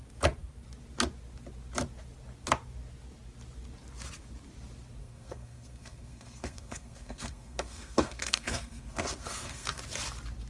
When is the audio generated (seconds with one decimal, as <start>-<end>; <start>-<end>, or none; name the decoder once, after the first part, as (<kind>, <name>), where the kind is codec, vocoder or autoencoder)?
5.0-9.8 (codec, SNAC)